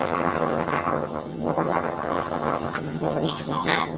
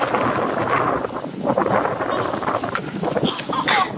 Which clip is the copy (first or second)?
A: first